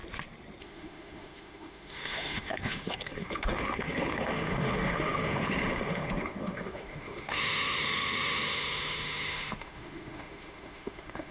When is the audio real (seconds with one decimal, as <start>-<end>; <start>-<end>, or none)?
0.0-0.6